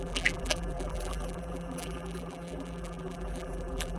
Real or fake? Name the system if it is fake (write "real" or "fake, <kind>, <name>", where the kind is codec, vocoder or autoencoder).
fake, vocoder, BigVGAN v2